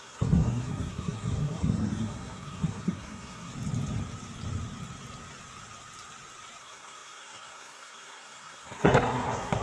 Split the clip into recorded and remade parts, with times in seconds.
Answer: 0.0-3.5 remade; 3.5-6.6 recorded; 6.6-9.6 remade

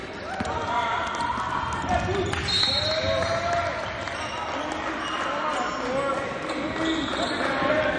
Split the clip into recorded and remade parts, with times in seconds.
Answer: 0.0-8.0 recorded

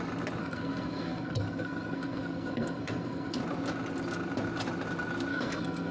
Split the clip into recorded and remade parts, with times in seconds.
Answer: 0.0-0.4 recorded; 0.4-3.4 remade; 3.4-5.3 recorded; 5.3-5.9 remade

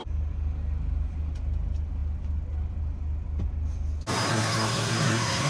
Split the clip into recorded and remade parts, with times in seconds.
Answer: 0.0-4.3 recorded; 4.3-5.5 remade